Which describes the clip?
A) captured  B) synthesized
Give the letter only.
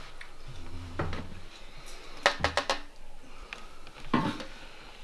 A